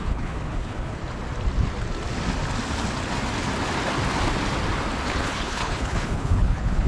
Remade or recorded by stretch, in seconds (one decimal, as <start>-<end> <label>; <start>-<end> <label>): 0.0-1.0 remade; 1.0-5.1 recorded; 5.1-6.9 remade